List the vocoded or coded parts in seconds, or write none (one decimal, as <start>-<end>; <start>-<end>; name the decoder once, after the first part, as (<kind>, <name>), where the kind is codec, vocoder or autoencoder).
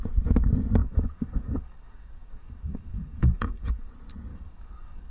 0.8-3.9 (codec, DAC); 4.3-5.1